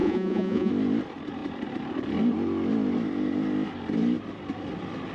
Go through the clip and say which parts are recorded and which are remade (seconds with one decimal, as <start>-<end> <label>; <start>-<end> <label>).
0.0-0.7 remade; 0.7-5.1 recorded